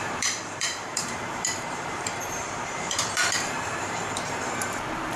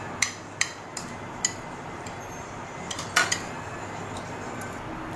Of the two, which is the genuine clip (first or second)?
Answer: second